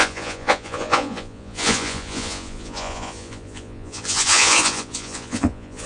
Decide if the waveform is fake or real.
fake